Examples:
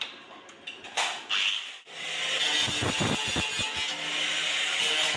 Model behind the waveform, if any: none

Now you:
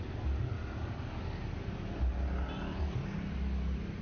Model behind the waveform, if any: none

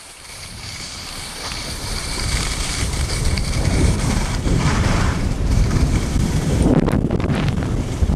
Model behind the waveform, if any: vocoder, BigVGAN v2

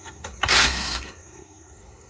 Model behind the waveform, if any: codec, SNAC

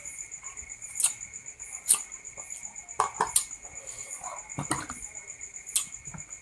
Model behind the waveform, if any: none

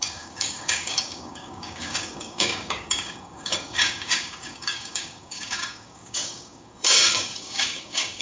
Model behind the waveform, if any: codec, DAC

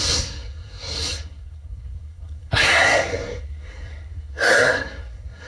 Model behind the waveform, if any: codec, SNAC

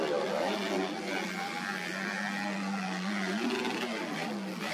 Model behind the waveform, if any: none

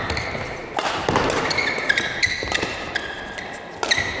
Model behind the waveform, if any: none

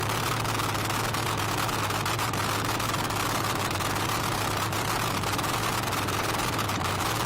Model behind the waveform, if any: none